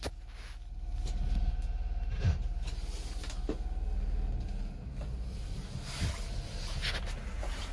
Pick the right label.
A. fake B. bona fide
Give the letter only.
B